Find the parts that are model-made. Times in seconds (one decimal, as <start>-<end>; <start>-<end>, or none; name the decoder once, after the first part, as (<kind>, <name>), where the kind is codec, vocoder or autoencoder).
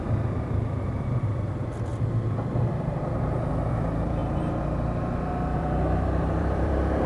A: 0.0-4.2 (vocoder, BigVGAN v2); 5.3-7.1